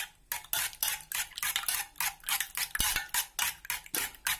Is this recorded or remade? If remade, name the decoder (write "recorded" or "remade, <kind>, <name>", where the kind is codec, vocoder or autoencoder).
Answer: recorded